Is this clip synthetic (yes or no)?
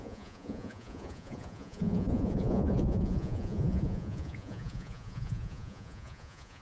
yes